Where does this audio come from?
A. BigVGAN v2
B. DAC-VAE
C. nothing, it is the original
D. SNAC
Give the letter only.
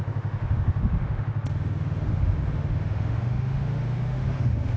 B